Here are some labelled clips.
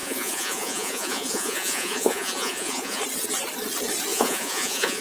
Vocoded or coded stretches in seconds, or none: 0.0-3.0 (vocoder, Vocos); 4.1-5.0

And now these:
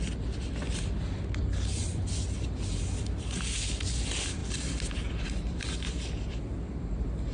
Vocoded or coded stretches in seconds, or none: 0.0-7.3 (vocoder, BigVGAN v2)